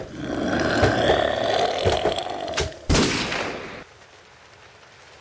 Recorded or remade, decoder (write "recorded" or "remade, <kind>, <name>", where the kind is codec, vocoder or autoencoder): recorded